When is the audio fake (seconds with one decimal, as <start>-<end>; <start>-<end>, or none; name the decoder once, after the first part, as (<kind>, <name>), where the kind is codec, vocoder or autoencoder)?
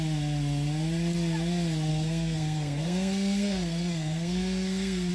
1.9-5.1 (codec, SNAC)